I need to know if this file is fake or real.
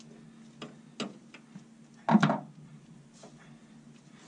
real